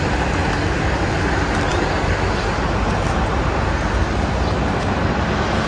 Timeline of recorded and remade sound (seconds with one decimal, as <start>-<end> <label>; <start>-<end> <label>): 0.0-5.7 recorded